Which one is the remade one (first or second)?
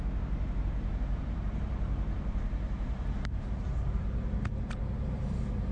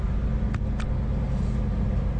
first